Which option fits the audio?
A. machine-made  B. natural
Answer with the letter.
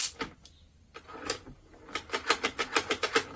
B